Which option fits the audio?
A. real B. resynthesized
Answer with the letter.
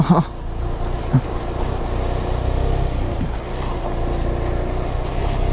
A